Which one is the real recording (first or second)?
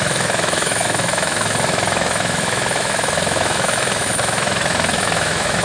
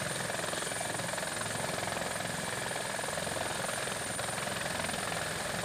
second